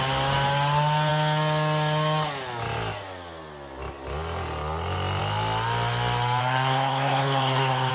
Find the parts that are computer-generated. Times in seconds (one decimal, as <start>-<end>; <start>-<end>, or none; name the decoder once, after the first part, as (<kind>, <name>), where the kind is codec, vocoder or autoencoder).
6.4-7.9 (codec, SNAC)